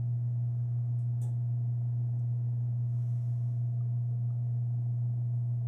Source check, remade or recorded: recorded